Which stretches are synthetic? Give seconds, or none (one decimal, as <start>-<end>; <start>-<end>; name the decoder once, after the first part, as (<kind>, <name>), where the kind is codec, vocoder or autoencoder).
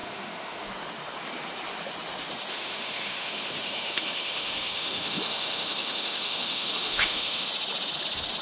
0.0-0.7 (autoencoder, DAC-VAE); 2.5-7.5